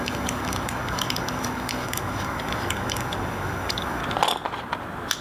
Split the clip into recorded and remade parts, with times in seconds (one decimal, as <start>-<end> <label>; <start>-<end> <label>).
0.0-4.0 remade; 4.0-5.2 recorded

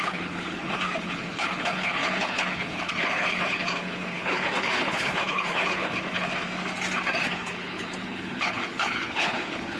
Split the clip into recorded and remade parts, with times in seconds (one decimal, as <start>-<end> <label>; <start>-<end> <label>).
0.0-6.3 remade; 6.3-7.3 recorded; 7.3-9.8 remade

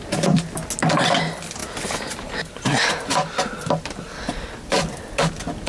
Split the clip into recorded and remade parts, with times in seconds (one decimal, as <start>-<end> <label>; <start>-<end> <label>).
0.0-1.6 recorded; 1.6-5.0 remade; 5.0-5.7 recorded

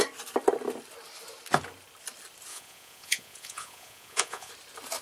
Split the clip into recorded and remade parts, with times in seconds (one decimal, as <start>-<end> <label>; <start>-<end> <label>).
0.0-2.5 recorded; 2.5-4.5 remade; 4.5-5.0 recorded